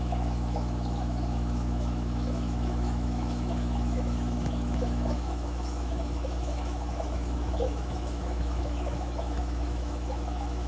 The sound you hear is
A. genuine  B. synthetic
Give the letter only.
B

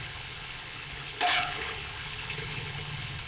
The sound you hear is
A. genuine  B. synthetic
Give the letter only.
B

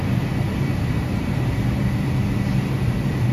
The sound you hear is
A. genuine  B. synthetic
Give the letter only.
A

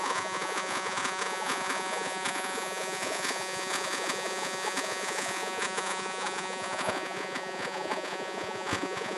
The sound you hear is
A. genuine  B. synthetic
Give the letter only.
B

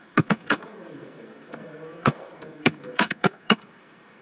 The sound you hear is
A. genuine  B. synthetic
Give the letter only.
B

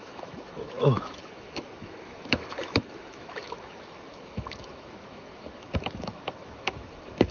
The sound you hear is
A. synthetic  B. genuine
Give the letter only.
A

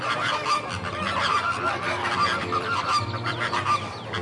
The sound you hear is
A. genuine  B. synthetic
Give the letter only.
B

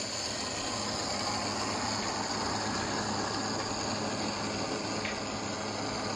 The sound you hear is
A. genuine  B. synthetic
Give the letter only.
A